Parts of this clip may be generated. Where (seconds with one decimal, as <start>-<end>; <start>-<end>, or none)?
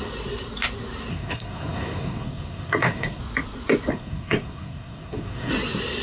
1.1-3.2; 3.9-5.5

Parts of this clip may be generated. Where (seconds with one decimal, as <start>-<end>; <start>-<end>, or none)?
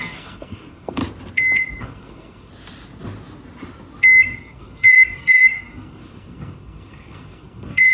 0.0-1.0; 1.8-2.5; 4.2-7.9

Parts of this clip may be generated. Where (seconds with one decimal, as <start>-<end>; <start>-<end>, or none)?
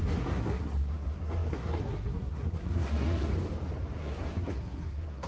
0.0-3.3; 4.0-5.3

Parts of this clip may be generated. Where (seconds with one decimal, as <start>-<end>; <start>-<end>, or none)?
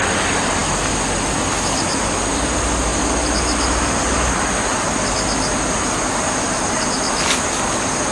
none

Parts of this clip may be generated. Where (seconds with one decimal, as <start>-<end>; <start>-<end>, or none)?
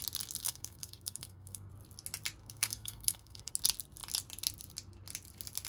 0.4-1.7; 2.4-3.5